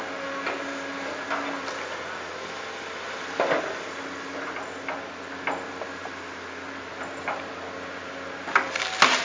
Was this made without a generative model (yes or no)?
yes